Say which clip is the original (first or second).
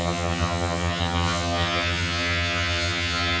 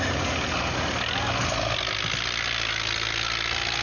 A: second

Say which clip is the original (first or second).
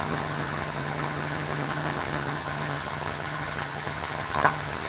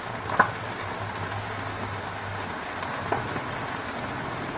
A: second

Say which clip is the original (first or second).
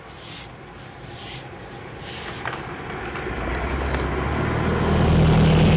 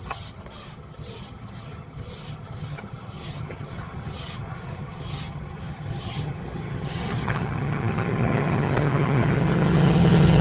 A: first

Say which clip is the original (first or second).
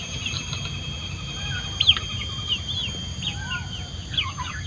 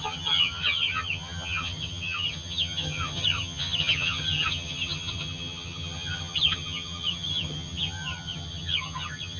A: first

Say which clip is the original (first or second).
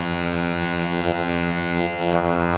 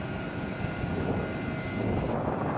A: second